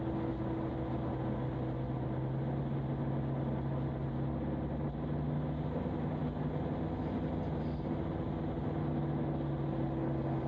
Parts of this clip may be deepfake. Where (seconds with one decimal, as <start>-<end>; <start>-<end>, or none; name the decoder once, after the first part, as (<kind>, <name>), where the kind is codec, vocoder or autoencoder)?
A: none